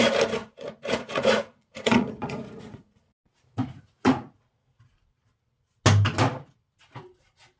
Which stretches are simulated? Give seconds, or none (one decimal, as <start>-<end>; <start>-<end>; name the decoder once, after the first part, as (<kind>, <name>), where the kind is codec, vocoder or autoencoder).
0.4-4.9 (vocoder, Vocos)